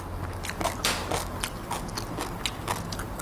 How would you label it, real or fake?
real